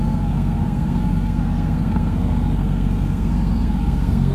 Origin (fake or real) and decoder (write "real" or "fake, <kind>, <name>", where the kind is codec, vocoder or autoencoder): fake, codec, SNAC